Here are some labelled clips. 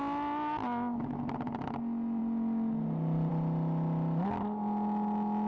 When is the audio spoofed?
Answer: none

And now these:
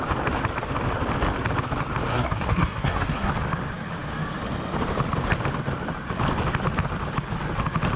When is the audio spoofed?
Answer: 2.1-3.3 (codec, SNAC)

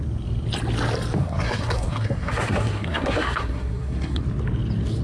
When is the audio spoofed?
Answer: 1.2-4.2 (codec, SNAC)

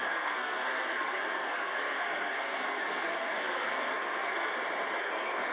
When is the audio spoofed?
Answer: 0.0-4.5 (codec, SNAC); 5.0-5.5